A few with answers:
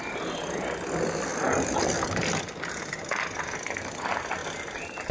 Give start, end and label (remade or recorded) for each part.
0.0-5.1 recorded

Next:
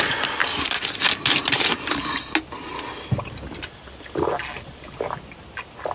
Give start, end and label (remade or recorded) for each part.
0.0-5.9 recorded

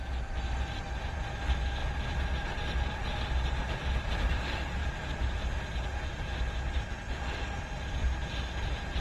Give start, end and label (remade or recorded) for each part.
0.0-9.0 recorded

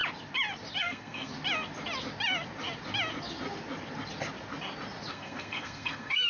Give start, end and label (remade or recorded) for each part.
0.0-0.8 recorded; 0.8-1.3 remade; 1.3-5.1 recorded; 5.1-6.3 remade

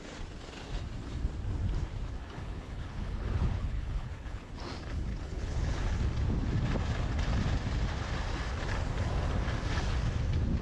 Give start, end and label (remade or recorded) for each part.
0.0-2.2 recorded; 2.2-4.5 remade; 4.5-5.1 recorded; 5.1-5.8 remade; 5.8-10.6 recorded

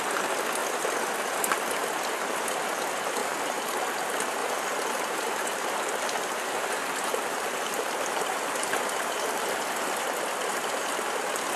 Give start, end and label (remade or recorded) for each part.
0.0-3.2 recorded; 3.2-3.9 remade; 3.9-4.4 recorded; 4.4-9.5 remade; 9.5-11.6 recorded